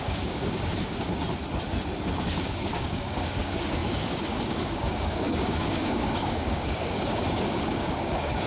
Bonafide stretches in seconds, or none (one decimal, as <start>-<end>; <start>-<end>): 1.1-2.0